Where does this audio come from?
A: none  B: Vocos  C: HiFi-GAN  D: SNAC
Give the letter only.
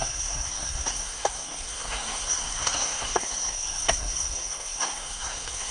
D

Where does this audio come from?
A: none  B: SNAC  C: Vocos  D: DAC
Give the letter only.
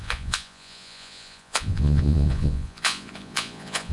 C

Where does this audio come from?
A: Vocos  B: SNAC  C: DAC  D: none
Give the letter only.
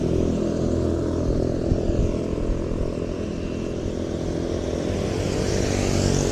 D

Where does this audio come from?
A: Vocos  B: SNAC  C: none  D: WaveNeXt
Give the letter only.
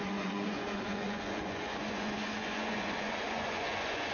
A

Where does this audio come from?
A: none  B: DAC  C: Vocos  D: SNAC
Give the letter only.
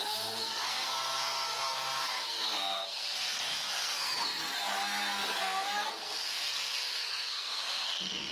D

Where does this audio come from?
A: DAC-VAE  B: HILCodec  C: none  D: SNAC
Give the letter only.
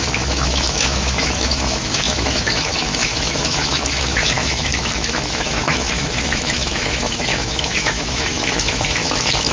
A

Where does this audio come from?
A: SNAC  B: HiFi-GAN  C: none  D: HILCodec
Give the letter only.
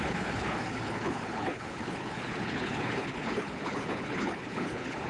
D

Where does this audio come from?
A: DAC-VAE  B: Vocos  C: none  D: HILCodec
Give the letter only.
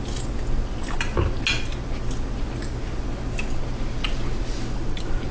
C